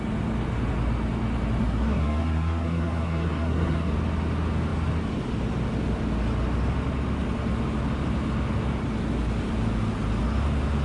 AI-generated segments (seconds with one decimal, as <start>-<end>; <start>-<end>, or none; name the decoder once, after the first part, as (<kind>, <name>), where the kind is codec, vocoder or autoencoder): 1.6-3.9 (codec, SNAC)